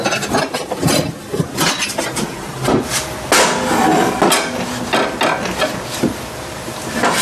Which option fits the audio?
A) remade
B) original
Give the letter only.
B